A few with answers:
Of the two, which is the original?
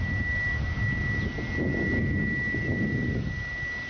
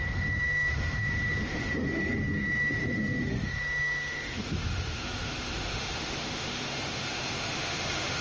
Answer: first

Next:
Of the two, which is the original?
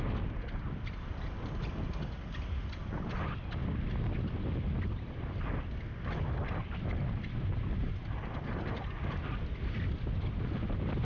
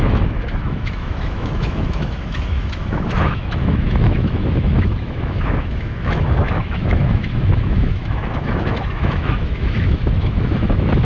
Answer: first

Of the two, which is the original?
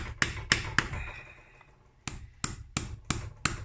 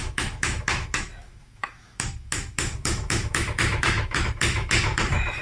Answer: first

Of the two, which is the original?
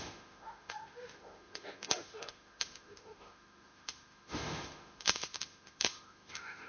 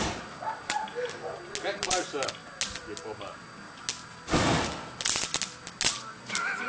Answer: second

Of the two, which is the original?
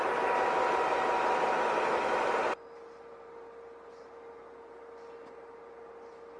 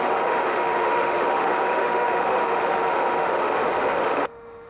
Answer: first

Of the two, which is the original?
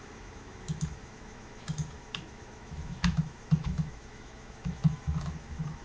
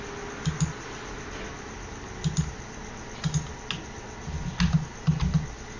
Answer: second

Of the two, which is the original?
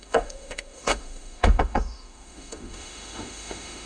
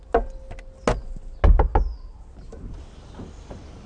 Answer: second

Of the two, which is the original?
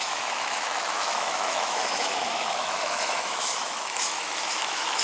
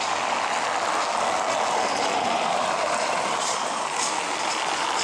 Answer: second